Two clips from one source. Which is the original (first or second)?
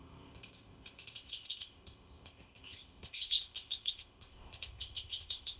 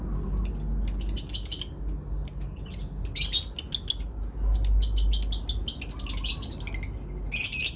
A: second